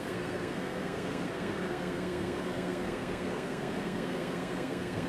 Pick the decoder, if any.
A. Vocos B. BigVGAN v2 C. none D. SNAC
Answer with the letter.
D